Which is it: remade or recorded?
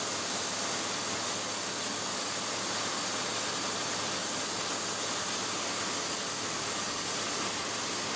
recorded